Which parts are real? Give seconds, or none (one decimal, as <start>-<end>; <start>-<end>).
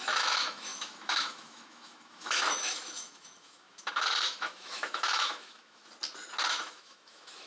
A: 5.8-6.5